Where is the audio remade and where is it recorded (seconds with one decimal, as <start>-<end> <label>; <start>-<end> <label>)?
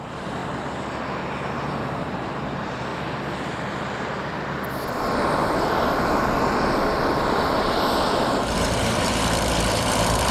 0.0-0.4 remade; 0.4-1.2 recorded; 1.2-2.9 remade; 2.9-7.2 recorded; 7.2-10.3 remade